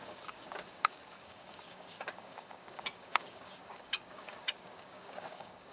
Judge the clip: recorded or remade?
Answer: remade